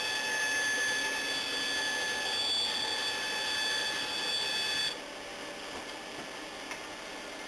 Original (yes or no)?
yes